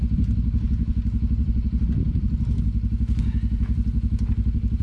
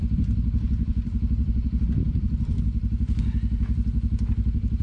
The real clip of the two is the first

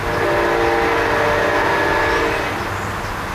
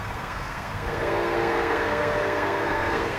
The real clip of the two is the first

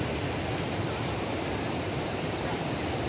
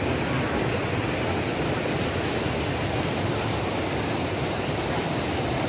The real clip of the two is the second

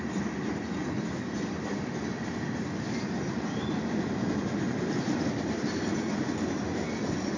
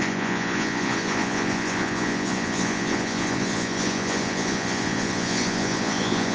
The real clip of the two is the first